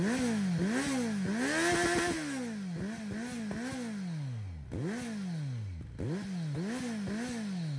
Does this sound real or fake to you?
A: real